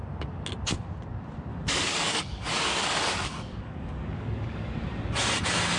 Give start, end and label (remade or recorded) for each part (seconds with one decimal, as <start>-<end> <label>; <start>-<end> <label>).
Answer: 0.0-1.5 recorded; 1.5-5.0 remade; 5.0-5.8 recorded